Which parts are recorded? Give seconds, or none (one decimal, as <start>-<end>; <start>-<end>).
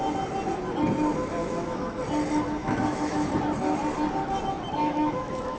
0.0-1.4; 2.0-2.6; 3.4-4.8